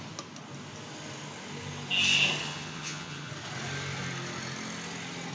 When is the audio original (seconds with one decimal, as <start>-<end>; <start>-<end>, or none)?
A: 0.0-2.4; 3.3-5.3